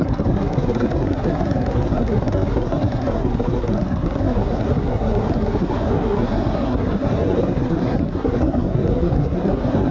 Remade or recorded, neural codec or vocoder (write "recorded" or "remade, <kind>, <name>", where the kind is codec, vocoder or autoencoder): remade, codec, SNAC